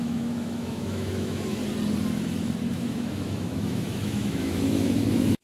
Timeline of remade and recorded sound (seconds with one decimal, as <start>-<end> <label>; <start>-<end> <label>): 0.0-1.6 remade; 1.6-2.7 recorded; 2.7-5.4 remade